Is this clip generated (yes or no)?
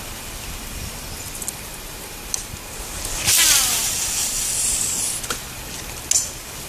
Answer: no